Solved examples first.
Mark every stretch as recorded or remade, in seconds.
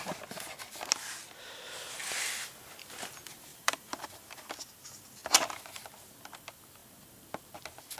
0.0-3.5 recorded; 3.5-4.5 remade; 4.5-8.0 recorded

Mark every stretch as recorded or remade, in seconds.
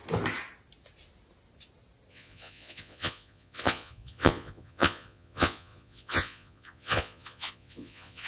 0.0-2.1 recorded; 2.1-8.3 remade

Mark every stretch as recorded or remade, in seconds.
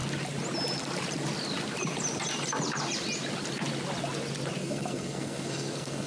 0.0-4.6 recorded; 4.6-6.1 remade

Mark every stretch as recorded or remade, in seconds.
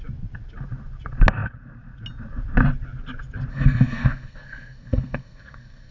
0.0-3.5 recorded; 3.5-5.9 remade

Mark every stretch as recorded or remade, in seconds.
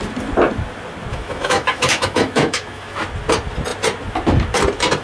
0.0-1.1 recorded; 1.1-3.0 remade; 3.0-5.0 recorded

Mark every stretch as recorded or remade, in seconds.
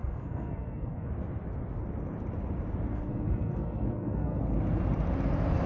0.0-1.1 remade; 1.1-2.9 recorded; 2.9-4.4 remade; 4.4-5.7 recorded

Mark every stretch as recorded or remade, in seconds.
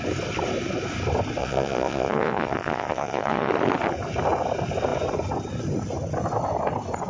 0.0-1.4 recorded; 1.4-3.5 remade; 3.5-7.1 recorded